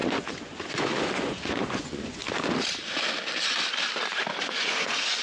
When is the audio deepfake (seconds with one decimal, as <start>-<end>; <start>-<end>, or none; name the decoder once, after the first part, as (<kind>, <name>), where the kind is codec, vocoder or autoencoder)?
0.0-2.2 (vocoder, Vocos); 4.3-5.2